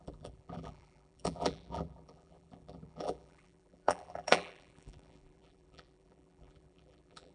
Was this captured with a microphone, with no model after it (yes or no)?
no